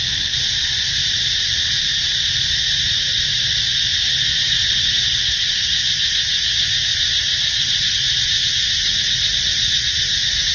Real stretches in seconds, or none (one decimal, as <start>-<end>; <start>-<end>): 0.0-0.6; 3.5-3.9; 5.2-6.9; 7.9-10.5